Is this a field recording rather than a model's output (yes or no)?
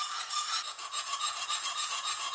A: no